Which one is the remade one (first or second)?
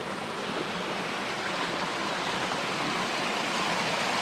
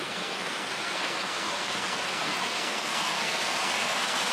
second